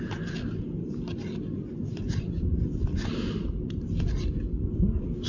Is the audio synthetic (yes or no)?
no